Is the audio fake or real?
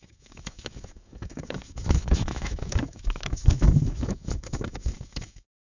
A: fake